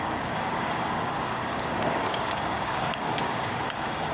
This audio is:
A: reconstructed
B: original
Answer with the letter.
A